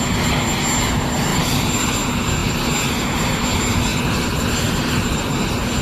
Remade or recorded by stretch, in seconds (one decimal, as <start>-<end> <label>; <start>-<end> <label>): 0.0-1.3 recorded; 1.3-1.9 remade; 1.9-3.9 recorded; 3.9-5.3 remade; 5.3-5.8 recorded